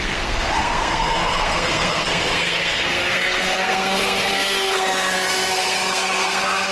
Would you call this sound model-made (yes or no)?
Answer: yes